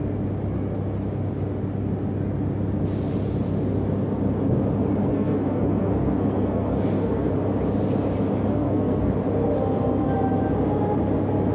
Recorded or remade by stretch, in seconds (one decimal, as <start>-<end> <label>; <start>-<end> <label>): 0.0-5.0 recorded; 5.0-7.3 remade; 7.3-8.5 recorded; 8.5-9.1 remade; 9.1-11.5 recorded